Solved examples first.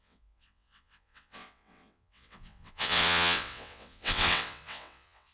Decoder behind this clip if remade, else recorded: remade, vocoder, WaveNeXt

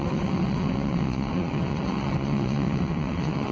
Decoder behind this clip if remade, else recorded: remade, vocoder, WaveNeXt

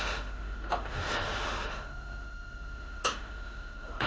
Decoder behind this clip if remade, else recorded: remade, autoencoder, DAC-VAE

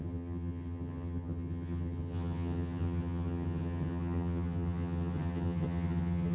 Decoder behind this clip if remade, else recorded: remade, vocoder, HiFi-GAN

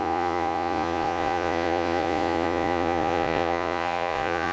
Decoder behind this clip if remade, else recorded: remade, vocoder, Vocos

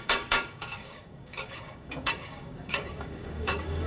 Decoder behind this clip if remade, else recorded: remade, codec, DAC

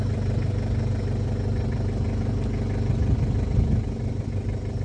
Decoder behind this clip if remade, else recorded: recorded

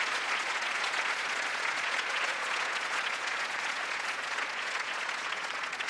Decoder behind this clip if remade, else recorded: remade, vocoder, Vocos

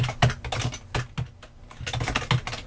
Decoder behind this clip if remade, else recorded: recorded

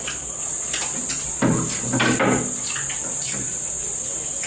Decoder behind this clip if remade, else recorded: recorded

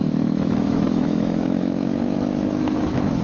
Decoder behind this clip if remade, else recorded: remade, autoencoder, DAC-VAE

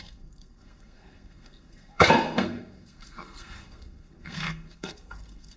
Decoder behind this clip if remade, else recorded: remade, codec, SNAC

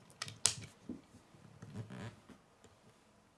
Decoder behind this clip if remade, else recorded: recorded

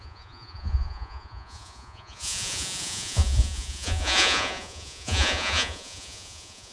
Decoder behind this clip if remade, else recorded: remade, vocoder, Vocos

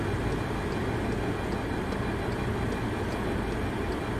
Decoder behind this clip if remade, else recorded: recorded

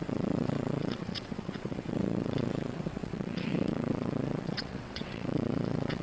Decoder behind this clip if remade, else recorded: remade, vocoder, WaveNeXt